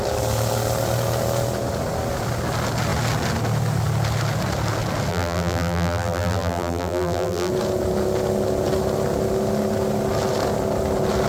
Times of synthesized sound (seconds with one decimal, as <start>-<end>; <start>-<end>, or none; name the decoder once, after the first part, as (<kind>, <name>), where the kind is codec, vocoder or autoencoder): 5.1-7.5 (vocoder, BigVGAN v2)